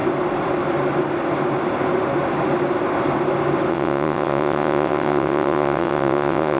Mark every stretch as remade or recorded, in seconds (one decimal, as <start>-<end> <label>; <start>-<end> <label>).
0.0-3.7 recorded; 3.7-6.6 remade